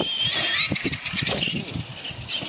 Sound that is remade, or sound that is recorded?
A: recorded